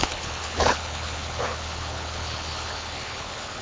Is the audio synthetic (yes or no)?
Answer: yes